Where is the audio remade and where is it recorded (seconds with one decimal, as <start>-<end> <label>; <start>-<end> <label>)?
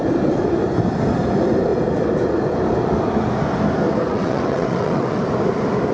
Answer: 0.0-4.1 recorded; 4.1-5.2 remade; 5.2-5.9 recorded